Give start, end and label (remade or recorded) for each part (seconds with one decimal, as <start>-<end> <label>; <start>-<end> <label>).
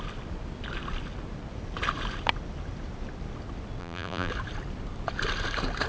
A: 0.0-3.8 recorded; 3.8-4.3 remade; 4.3-5.9 recorded